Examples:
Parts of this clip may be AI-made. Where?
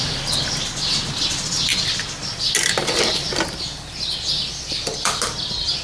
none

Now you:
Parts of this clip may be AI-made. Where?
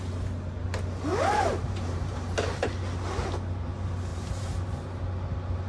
1.1-2.7 (vocoder, BigVGAN v2); 4.1-5.0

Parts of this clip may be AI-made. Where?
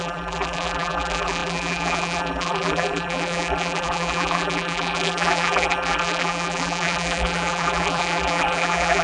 0.0-9.0 (vocoder, BigVGAN v2)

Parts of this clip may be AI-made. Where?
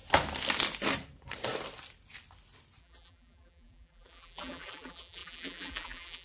2.8-6.2 (vocoder, BigVGAN v2)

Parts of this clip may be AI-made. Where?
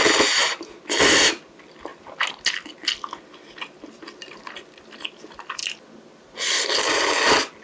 5.6-7.1 (vocoder, BigVGAN v2)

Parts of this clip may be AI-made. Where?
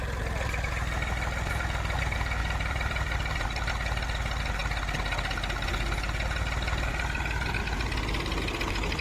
2.4-3.7 (vocoder, BigVGAN v2)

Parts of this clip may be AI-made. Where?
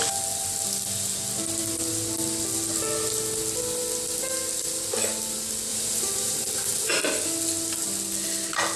5.7-6.9 (vocoder, BigVGAN v2)